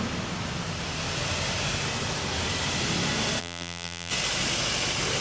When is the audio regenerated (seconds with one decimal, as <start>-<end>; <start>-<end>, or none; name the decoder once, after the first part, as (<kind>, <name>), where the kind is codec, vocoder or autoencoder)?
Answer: 3.4-4.1 (vocoder, BigVGAN v2)